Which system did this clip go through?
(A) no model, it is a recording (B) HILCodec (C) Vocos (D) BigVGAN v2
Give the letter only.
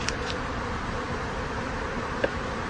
D